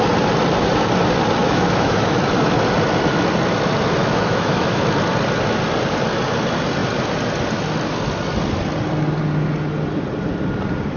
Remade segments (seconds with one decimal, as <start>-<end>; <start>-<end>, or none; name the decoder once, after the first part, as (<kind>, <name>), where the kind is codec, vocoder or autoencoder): 1.4-2.2 (autoencoder, DAC-VAE); 4.0-4.8